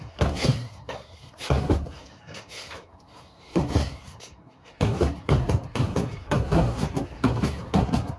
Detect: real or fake fake